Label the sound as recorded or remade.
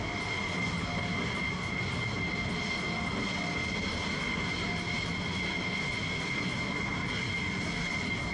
recorded